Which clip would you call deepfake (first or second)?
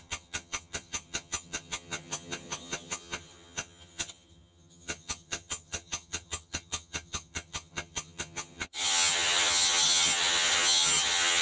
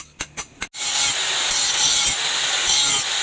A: first